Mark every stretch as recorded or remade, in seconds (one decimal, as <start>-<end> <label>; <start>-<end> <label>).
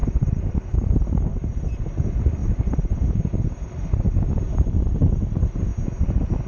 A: 0.0-5.7 remade; 5.7-6.5 recorded